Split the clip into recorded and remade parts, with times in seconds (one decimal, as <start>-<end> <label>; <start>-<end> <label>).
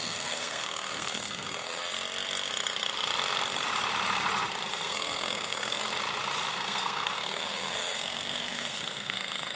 0.0-1.8 remade; 1.8-4.7 recorded; 4.7-5.8 remade; 5.8-6.5 recorded; 6.5-9.6 remade